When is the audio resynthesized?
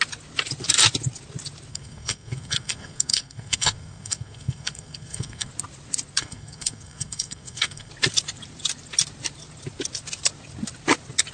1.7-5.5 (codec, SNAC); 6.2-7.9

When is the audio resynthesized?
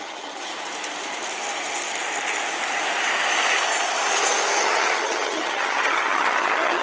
0.0-0.5 (vocoder, HiFi-GAN); 4.6-6.8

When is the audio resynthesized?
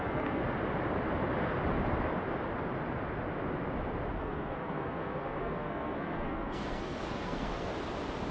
0.0-0.4 (codec, SNAC); 4.2-7.7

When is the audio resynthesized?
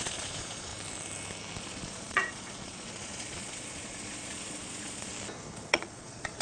0.0-0.7 (vocoder, Vocos); 1.6-5.1; 5.7-6.4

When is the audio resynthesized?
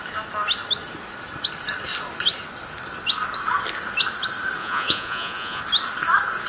4.6-5.6 (vocoder, Vocos)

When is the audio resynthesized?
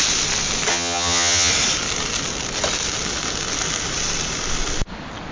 0.7-1.5 (vocoder, HiFi-GAN)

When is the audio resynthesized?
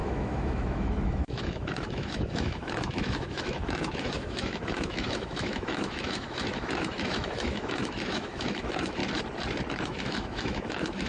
0.0-9.0 (autoencoder, DAC-VAE); 9.7-11.1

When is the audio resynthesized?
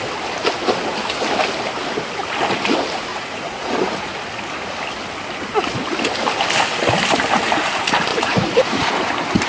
3.1-4.2 (vocoder, Vocos); 8.1-8.9